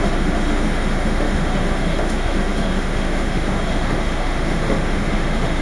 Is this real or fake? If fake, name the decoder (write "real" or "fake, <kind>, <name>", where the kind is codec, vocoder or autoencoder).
fake, autoencoder, DAC-VAE